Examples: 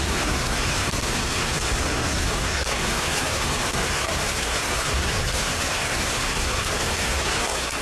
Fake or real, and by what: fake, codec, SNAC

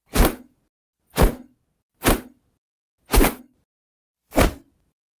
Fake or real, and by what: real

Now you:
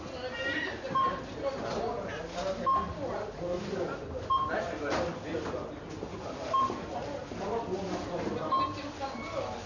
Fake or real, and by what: real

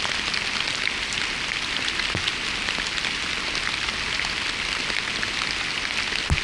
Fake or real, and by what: real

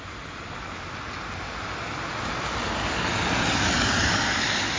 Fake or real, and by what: real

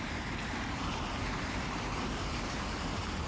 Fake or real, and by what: fake, vocoder, BigVGAN v2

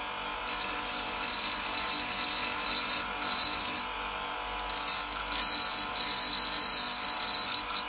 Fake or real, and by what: real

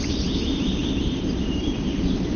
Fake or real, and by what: fake, vocoder, BigVGAN v2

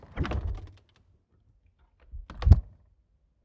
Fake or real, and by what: real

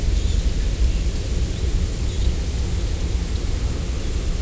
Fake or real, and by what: real